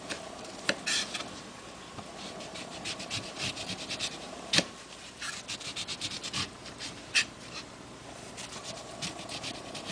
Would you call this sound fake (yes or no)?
yes